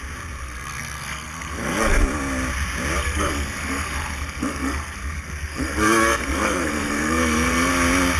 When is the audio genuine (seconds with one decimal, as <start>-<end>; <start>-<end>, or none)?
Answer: 0.0-0.4; 2.0-3.0; 7.7-8.2